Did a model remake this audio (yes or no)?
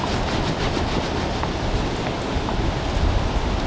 no